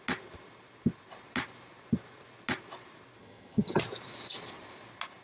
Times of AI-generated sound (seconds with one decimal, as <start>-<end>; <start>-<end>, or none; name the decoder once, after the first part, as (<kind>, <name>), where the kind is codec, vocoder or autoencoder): 3.2-3.8 (vocoder, HiFi-GAN)